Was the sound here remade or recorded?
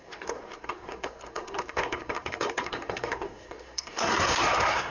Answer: remade